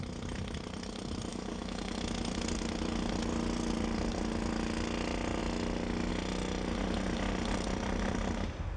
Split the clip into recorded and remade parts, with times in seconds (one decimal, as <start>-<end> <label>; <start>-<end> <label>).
0.0-1.3 recorded; 1.3-2.0 remade; 2.0-8.8 recorded